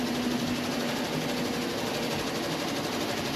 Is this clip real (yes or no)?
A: yes